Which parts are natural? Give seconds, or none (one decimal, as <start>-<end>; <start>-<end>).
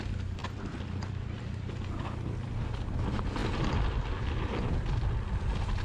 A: 0.0-0.4; 2.5-5.8